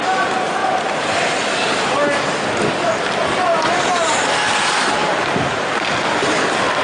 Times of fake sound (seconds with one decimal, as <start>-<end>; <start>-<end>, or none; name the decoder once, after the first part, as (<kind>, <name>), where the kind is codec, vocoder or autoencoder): none